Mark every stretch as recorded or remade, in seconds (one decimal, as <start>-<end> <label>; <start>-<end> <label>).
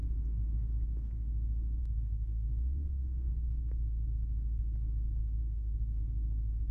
0.0-1.8 recorded; 1.8-3.3 remade; 3.3-5.4 recorded; 5.4-6.0 remade; 6.0-6.7 recorded